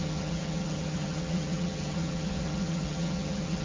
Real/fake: fake